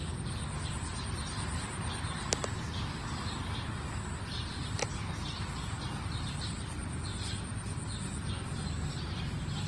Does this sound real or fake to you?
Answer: real